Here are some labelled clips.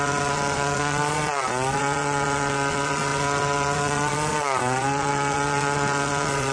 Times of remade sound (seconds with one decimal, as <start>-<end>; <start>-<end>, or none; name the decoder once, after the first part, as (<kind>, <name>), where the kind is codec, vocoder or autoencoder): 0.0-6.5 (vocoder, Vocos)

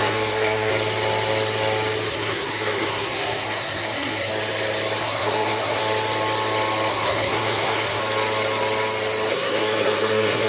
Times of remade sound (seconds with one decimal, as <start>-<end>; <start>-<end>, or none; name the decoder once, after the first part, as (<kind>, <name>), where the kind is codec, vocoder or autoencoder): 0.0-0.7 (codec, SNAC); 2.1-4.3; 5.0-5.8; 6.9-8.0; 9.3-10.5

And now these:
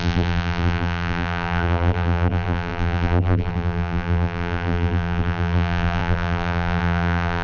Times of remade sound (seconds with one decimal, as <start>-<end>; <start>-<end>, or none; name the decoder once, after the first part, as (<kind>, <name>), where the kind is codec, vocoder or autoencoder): 0.0-7.4 (vocoder, BigVGAN v2)

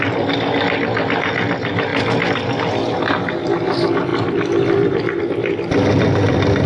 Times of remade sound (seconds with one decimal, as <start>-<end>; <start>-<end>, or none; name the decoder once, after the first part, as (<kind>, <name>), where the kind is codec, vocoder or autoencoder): none